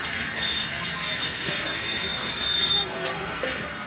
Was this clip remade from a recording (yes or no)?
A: yes